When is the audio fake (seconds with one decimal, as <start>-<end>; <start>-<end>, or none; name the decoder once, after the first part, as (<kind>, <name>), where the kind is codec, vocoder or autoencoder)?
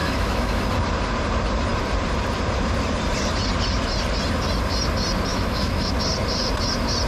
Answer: 0.0-0.6 (autoencoder, DAC-VAE); 5.3-5.9